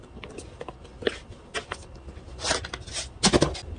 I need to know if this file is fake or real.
real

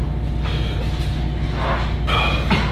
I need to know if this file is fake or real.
real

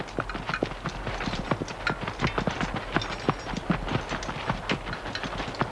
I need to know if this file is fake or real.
real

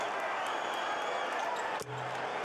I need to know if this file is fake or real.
real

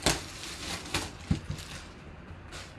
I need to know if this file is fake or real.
real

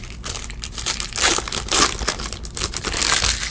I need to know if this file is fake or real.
real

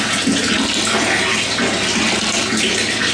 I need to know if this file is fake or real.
real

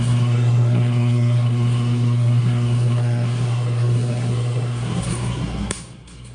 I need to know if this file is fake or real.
fake